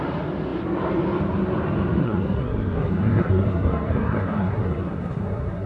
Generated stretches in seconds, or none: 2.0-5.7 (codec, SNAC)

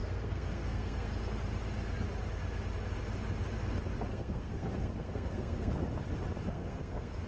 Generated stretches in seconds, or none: 0.0-1.1 (codec, SNAC); 4.1-5.7; 6.5-7.3

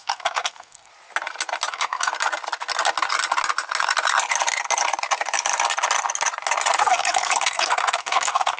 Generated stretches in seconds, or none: 0.0-0.9 (codec, SNAC); 1.7-2.1; 6.8-8.6

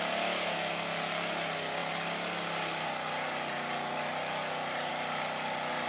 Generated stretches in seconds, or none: none

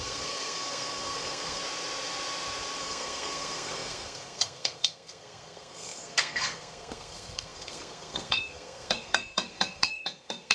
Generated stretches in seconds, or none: 0.0-1.6 (codec, SNAC); 2.8-10.5

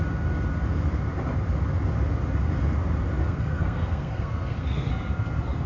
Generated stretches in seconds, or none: 3.2-4.9 (codec, SNAC)

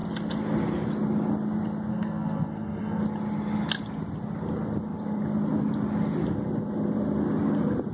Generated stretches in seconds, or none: 1.9-3.0 (codec, SNAC)

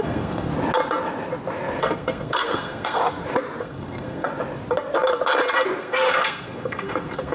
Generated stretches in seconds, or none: 0.0-0.5 (codec, SNAC); 1.8-3.0; 3.6-4.3; 5.8-7.3